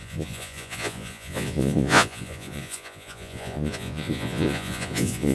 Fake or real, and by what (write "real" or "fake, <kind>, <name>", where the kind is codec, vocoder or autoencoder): fake, vocoder, Vocos